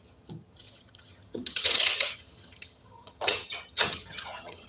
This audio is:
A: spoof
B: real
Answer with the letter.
A